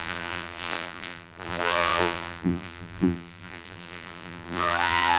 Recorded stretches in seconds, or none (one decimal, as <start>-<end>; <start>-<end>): none